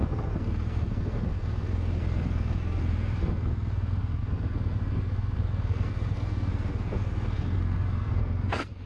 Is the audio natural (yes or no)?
no